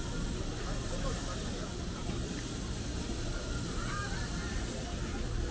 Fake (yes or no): no